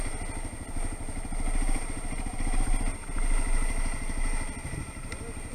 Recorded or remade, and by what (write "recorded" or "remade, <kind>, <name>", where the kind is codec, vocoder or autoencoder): recorded